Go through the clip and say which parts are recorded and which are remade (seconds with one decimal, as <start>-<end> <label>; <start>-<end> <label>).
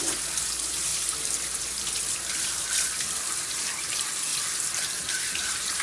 0.0-4.3 remade; 4.3-5.3 recorded; 5.3-5.8 remade